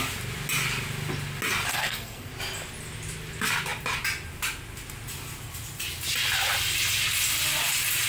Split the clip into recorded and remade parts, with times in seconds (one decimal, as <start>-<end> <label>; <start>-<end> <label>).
0.0-1.7 recorded; 1.7-2.3 remade; 2.3-8.1 recorded